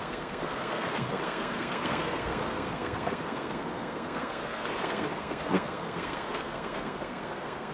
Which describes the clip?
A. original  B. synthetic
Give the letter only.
B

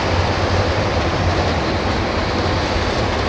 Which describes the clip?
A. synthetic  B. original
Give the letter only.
A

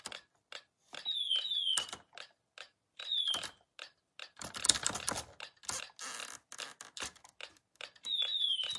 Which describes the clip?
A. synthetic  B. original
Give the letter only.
B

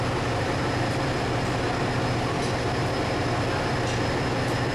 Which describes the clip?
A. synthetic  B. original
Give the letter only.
B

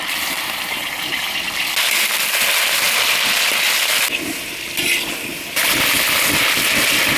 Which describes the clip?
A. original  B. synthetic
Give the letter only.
A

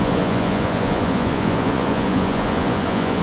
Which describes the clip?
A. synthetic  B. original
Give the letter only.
A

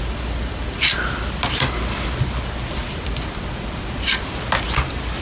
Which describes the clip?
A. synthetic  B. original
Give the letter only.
B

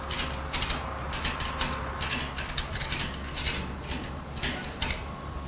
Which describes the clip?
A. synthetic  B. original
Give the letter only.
B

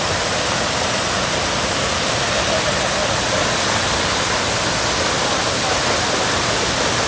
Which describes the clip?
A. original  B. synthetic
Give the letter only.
A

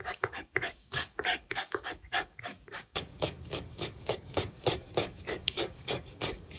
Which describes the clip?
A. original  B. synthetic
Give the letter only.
B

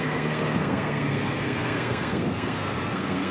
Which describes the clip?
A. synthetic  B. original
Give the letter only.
A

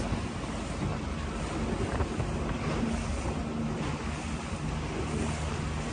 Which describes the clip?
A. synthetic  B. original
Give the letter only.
B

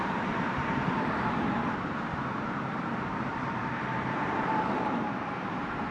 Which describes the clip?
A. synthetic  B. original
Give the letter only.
A